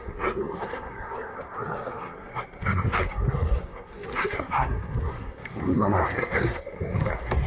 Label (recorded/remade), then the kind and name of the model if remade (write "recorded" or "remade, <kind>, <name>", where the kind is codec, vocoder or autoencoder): remade, codec, SNAC